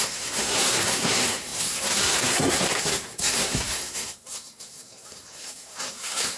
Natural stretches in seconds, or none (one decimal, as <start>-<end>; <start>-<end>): none